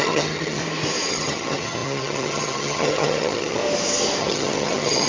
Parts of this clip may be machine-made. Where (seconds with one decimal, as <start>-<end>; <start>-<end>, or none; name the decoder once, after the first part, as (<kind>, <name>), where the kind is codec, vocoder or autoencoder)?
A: 0.0-0.6 (vocoder, HiFi-GAN); 1.1-3.6; 4.2-5.1